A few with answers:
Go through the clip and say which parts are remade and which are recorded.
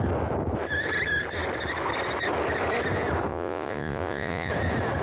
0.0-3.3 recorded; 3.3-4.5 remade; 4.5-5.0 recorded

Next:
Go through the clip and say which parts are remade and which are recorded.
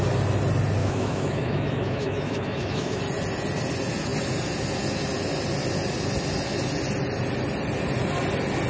0.0-0.8 recorded; 0.8-3.0 remade; 3.0-8.7 recorded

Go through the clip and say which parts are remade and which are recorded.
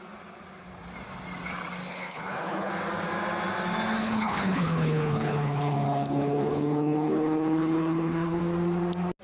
0.0-1.9 recorded; 1.9-2.7 remade; 2.7-4.0 recorded; 4.0-8.4 remade; 8.4-9.2 recorded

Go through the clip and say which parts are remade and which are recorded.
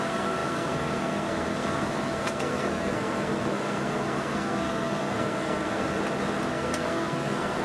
0.0-6.0 remade; 6.0-6.5 recorded; 6.5-7.6 remade